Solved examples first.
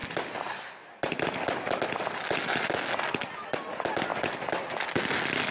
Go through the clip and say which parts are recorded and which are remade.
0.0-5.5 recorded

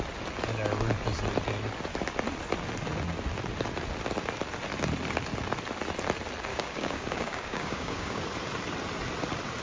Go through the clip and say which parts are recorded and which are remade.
0.0-6.5 recorded; 6.5-8.2 remade; 8.2-9.6 recorded

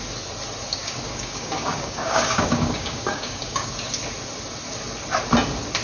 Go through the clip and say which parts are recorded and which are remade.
0.0-0.8 recorded; 0.8-3.7 remade; 3.7-5.8 recorded

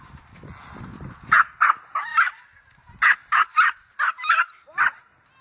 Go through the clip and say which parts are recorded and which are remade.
0.0-5.4 recorded

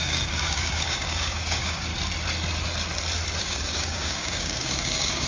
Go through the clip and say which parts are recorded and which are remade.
0.0-1.9 remade; 1.9-3.4 recorded; 3.4-5.3 remade

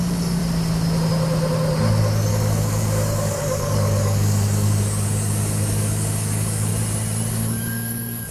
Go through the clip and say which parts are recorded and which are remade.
0.0-0.4 remade; 0.4-2.3 recorded; 2.3-6.7 remade; 6.7-7.3 recorded; 7.3-8.3 remade